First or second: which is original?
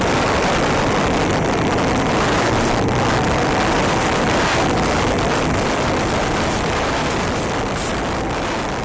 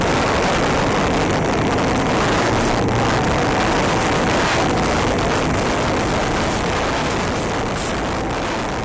second